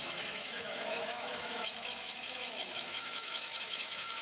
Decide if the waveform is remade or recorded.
remade